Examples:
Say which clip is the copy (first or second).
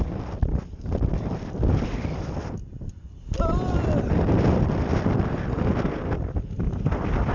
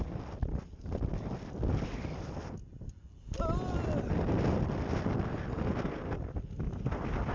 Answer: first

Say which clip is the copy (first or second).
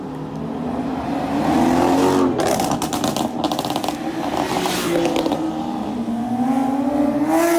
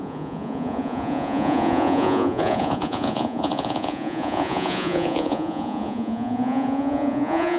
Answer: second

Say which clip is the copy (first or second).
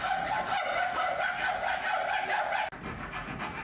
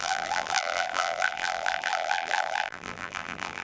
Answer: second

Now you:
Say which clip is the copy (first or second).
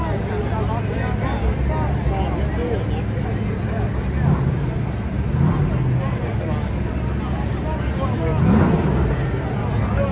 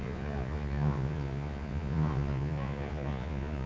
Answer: second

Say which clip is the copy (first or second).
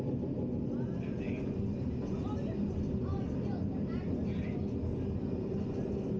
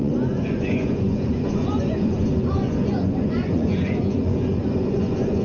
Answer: second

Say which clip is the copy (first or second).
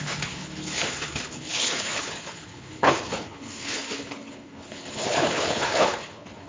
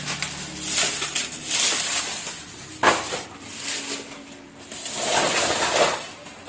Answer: first